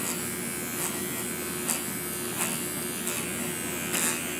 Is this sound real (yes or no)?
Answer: yes